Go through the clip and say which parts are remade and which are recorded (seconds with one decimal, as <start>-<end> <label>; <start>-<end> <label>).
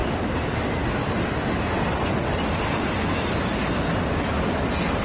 0.0-5.0 recorded